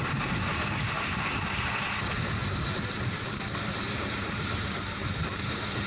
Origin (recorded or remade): remade